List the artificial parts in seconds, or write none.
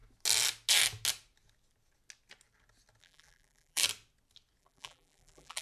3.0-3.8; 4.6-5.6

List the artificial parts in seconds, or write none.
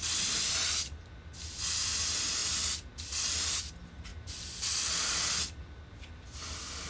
none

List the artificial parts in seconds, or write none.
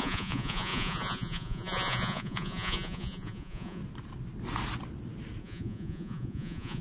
0.0-3.8; 5.4-6.8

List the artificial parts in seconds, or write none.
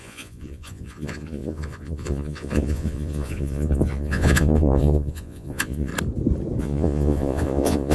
0.0-5.9; 6.6-7.9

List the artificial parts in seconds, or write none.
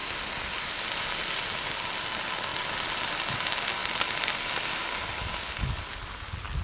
none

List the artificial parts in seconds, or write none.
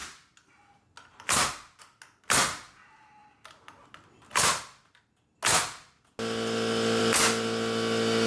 none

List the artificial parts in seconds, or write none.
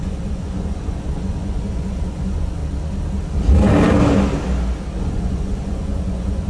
0.0-2.6; 5.0-6.5